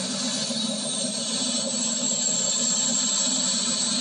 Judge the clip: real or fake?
fake